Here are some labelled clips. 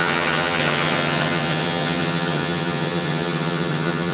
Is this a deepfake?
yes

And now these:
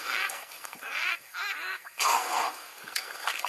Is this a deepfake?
yes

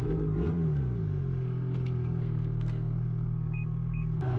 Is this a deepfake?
yes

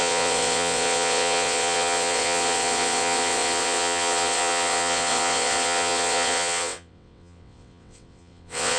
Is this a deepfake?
yes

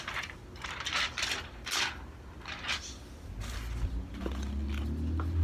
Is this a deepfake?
no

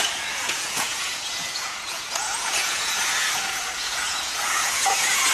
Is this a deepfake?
yes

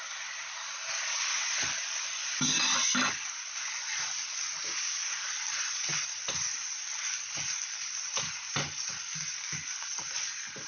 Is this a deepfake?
yes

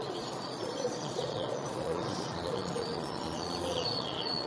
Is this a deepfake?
yes